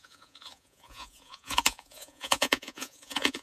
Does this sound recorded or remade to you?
remade